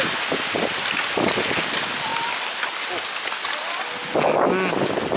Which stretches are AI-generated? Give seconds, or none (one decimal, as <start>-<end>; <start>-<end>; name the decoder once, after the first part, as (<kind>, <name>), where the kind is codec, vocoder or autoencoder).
none